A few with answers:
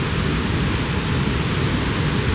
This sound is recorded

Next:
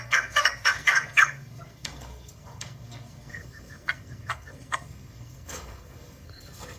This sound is remade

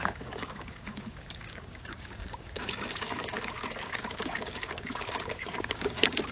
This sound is remade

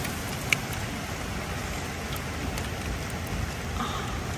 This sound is recorded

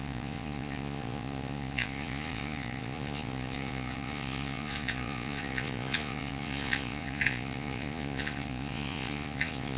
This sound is remade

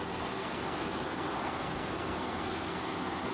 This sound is remade